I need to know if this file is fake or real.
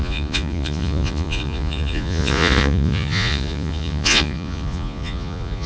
fake